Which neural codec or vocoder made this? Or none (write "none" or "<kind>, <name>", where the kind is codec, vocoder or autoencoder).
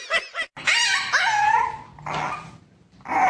none